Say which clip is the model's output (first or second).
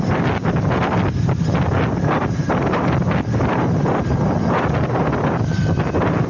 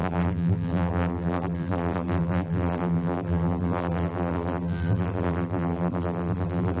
second